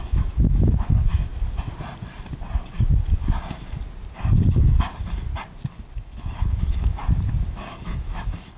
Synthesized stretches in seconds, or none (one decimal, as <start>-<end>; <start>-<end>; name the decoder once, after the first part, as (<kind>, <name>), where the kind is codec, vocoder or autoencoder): 0.0-1.3 (autoencoder, DAC-VAE); 6.0-7.0; 7.5-8.6